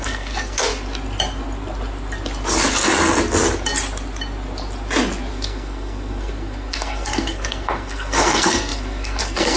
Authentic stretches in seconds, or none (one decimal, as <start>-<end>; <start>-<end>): 0.7-5.3